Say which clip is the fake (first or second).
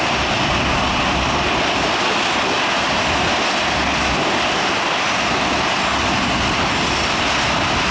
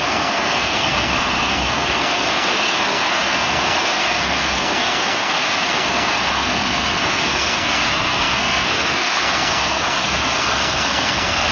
second